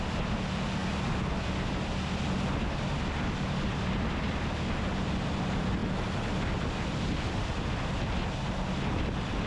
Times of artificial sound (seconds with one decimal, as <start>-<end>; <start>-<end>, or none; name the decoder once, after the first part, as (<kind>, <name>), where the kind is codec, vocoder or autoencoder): none